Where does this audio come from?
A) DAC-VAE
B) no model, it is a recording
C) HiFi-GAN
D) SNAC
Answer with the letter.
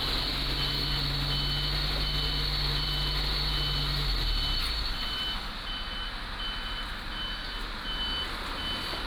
B